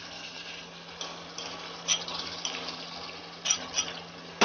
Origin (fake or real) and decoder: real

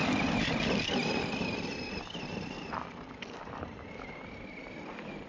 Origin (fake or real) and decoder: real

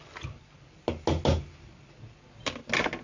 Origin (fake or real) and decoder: real